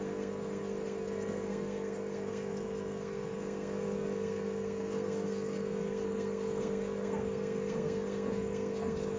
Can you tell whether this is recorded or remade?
remade